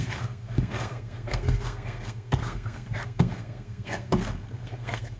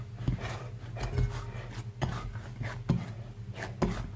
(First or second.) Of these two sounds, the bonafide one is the second